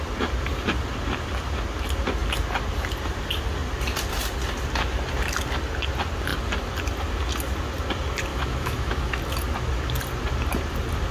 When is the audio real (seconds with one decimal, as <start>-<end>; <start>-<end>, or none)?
0.0-8.3; 9.2-11.1